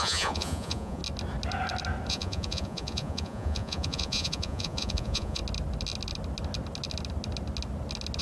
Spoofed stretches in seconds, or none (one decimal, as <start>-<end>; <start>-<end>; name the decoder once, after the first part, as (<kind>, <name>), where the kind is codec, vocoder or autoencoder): 0.0-1.0 (vocoder, Vocos); 2.1-5.4